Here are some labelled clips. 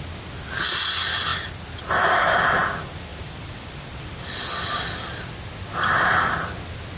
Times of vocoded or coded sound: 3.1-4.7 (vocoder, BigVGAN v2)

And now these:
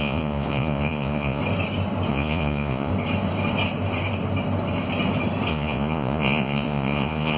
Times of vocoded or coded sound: 0.0-1.4 (vocoder, Vocos); 2.1-2.9; 5.5-7.4

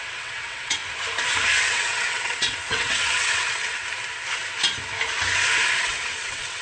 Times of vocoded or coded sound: 0.0-0.8 (vocoder, WaveNeXt); 1.6-3.8; 5.8-6.6

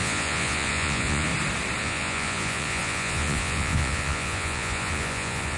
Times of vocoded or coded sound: 0.0-1.3 (vocoder, Vocos); 1.8-5.6

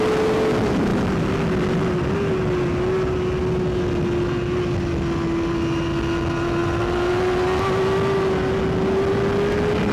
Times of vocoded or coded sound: none

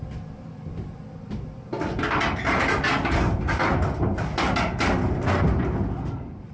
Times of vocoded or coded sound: none

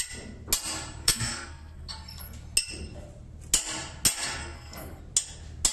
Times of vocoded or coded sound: 1.0-1.9 (codec, SNAC); 4.4-5.0

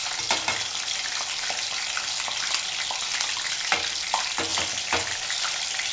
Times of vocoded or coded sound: none